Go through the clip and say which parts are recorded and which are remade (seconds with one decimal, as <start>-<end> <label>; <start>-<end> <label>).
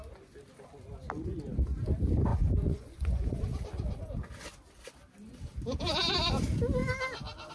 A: 0.0-2.3 recorded; 2.3-3.4 remade; 3.4-7.5 recorded